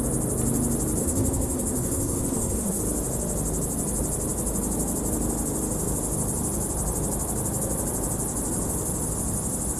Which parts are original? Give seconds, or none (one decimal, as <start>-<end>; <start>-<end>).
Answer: 0.0-1.0; 2.8-9.8